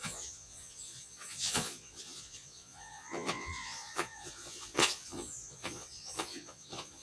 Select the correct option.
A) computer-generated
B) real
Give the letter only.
A